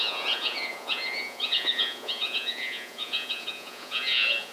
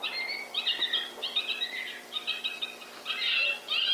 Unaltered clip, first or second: second